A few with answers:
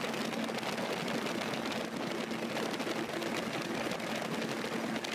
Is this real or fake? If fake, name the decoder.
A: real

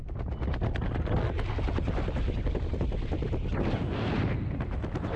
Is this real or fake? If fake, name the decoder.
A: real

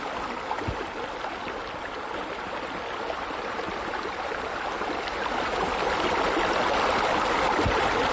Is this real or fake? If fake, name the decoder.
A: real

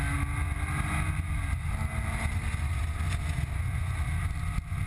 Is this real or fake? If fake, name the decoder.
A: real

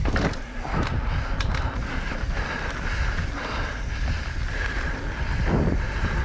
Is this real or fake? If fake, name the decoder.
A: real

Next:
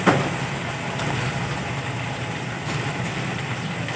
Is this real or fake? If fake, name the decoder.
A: real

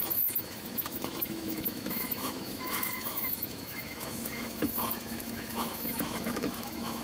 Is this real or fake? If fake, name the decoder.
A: fake, autoencoder, DAC-VAE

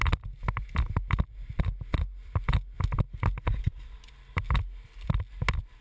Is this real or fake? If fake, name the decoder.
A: real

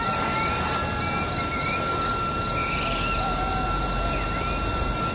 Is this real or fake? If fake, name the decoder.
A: real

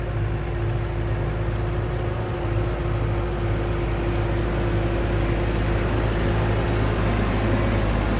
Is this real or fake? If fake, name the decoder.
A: real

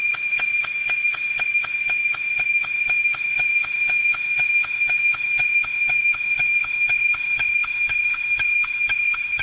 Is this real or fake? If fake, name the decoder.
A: fake, autoencoder, DAC-VAE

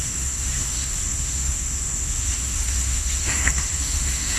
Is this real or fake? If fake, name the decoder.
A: fake, autoencoder, DAC-VAE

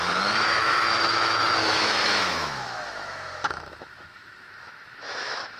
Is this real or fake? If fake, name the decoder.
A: fake, autoencoder, DAC-VAE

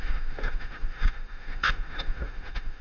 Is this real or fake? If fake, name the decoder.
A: fake, autoencoder, DAC-VAE